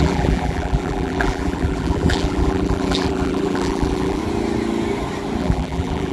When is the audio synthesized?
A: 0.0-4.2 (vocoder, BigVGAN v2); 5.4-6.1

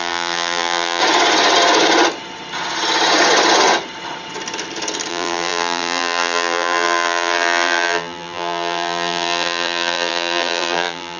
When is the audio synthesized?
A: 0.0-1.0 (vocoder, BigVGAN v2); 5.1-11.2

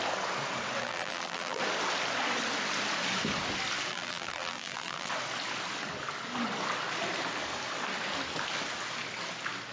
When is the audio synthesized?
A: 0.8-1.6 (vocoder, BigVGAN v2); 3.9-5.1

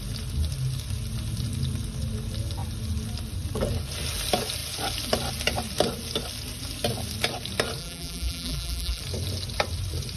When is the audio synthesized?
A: 7.8-9.0 (vocoder, BigVGAN v2)

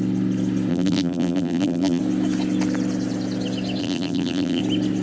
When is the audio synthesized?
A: 0.7-2.0 (vocoder, BigVGAN v2); 3.8-4.6

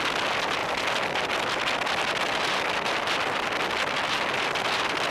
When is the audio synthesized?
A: none